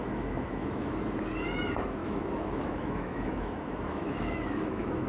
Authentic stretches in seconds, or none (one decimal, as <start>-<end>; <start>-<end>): 1.0-2.0